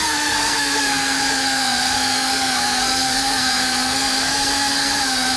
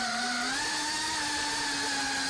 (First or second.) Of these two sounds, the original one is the second